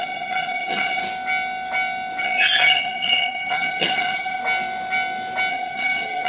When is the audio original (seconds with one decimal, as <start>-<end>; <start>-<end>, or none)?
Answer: 1.0-2.2; 4.4-5.5